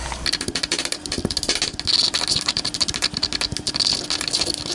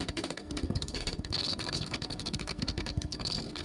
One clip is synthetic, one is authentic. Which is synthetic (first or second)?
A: second